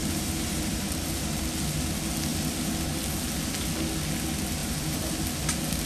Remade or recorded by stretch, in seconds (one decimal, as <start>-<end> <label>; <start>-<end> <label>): 0.0-1.4 remade; 1.4-4.6 recorded; 4.6-5.1 remade; 5.1-5.9 recorded